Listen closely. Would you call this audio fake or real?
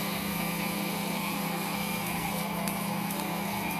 fake